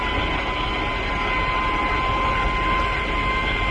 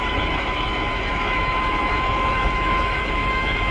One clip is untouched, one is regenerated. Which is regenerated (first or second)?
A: second